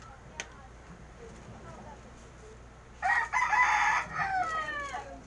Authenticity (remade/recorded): recorded